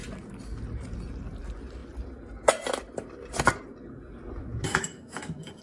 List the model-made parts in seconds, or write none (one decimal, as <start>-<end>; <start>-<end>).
4.4-5.6